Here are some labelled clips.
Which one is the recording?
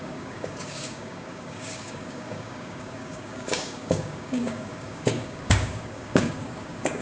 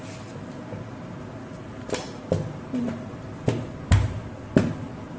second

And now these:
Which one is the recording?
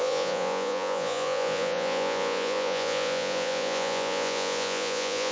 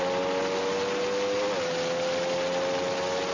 second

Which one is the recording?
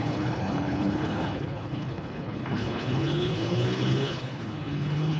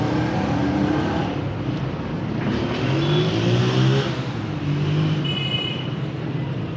second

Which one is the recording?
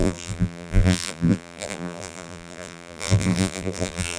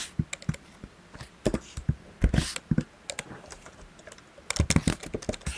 second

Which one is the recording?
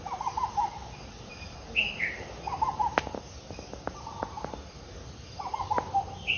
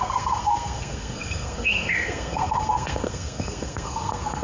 first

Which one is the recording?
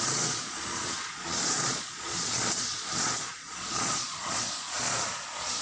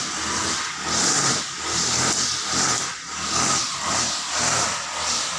second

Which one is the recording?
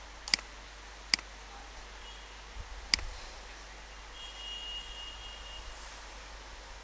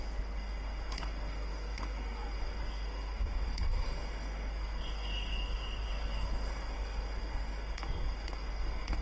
first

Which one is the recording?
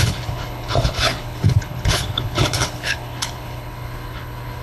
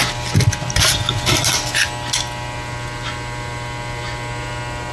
second